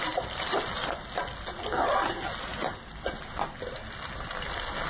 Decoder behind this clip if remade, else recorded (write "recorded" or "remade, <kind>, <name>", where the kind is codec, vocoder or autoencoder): recorded